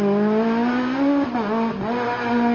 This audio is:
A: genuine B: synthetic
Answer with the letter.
A